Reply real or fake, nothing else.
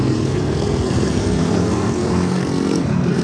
fake